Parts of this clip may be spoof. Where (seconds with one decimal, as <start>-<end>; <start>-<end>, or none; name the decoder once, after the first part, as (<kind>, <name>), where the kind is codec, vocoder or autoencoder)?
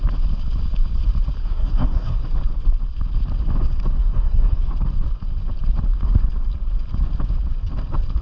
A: 1.4-2.2 (codec, SNAC); 4.0-4.7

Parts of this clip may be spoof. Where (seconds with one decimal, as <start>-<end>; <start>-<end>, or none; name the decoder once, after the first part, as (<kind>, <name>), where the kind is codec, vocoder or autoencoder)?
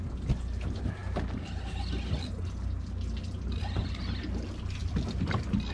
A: none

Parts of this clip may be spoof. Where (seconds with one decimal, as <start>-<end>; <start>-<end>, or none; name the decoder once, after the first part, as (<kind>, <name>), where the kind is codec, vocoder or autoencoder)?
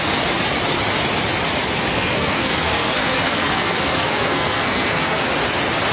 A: 1.9-5.3 (codec, SNAC)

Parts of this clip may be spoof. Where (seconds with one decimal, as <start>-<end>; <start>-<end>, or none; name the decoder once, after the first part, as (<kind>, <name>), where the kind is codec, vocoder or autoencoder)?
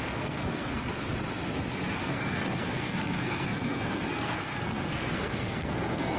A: 0.0-0.9 (codec, SNAC); 1.9-6.2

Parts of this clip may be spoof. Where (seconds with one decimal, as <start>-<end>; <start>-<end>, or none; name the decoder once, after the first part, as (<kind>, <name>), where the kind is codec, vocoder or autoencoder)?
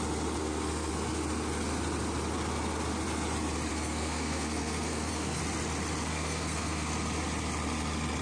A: 0.4-0.9 (codec, SNAC); 3.7-5.4; 6.1-6.9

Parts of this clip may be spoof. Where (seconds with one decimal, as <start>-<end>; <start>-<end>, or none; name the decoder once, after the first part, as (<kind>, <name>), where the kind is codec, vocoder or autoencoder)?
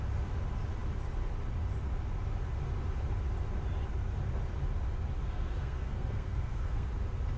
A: 5.2-6.9 (codec, SNAC)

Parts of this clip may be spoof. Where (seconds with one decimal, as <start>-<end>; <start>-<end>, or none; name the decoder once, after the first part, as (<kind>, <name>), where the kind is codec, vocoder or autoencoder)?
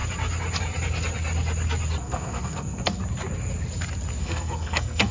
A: 2.0-3.0 (codec, SNAC); 4.2-5.1